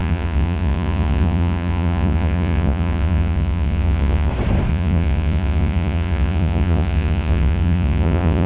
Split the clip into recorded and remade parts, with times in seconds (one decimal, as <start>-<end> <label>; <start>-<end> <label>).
0.0-4.3 remade; 4.3-4.7 recorded; 4.7-8.5 remade